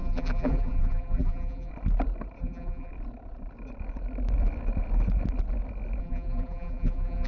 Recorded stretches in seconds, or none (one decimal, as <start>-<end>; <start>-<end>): 1.7-2.4; 2.9-6.0